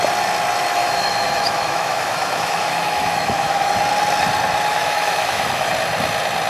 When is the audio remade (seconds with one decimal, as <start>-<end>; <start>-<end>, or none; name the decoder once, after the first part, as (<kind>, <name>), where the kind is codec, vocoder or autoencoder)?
0.8-3.7 (autoencoder, DAC-VAE); 4.7-5.7